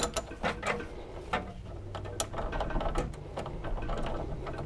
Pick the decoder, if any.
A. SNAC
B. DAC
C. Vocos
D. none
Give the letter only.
D